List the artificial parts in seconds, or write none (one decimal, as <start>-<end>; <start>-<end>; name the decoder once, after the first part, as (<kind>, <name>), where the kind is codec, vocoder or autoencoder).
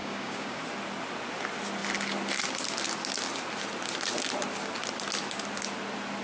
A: 0.0-0.6 (codec, DAC)